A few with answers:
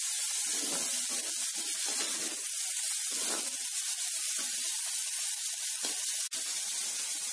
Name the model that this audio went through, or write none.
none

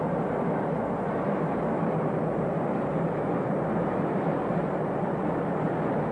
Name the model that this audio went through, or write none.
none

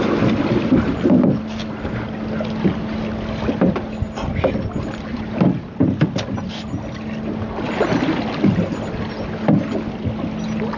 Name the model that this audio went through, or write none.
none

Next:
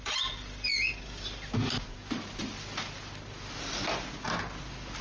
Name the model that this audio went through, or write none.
none